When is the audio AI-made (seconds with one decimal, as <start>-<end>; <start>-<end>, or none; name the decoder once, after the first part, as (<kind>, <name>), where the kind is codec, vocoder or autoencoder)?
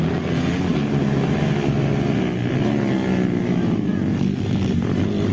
none